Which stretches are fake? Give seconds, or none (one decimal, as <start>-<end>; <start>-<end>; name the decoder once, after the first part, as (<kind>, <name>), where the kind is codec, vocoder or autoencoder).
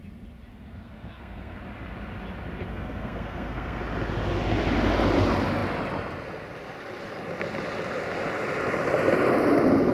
0.5-1.6 (codec, SNAC); 2.7-3.8